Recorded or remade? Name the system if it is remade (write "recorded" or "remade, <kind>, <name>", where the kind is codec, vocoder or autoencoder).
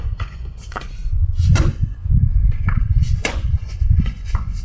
remade, vocoder, Vocos